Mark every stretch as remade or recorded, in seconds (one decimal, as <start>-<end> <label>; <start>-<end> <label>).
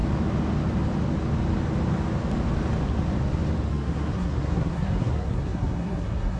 0.0-3.7 recorded; 3.7-6.4 remade